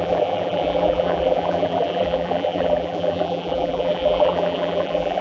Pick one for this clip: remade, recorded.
remade